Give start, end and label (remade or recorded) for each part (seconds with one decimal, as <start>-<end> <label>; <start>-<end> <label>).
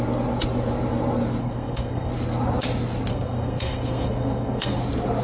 0.0-1.4 recorded; 1.4-2.1 remade; 2.1-3.1 recorded; 3.1-4.8 remade; 4.8-5.2 recorded